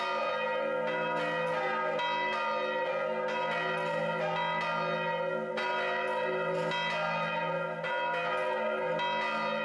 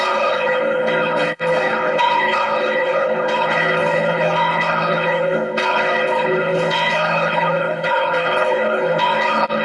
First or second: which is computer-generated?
second